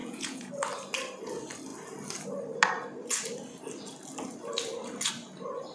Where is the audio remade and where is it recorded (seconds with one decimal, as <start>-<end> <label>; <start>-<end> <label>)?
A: 0.0-0.5 remade; 0.5-5.7 recorded